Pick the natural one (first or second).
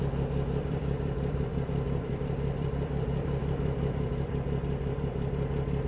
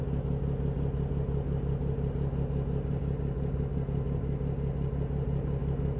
second